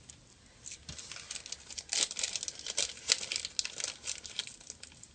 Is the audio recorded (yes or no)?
yes